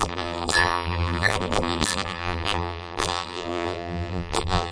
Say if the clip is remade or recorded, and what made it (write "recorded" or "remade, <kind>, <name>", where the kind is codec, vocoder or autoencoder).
remade, vocoder, BigVGAN v2